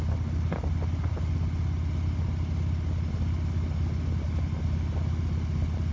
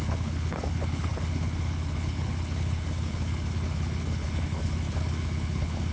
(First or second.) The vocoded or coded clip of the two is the second